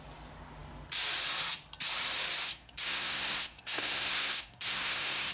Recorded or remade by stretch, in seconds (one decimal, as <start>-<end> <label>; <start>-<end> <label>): 0.0-2.4 recorded; 2.4-5.3 remade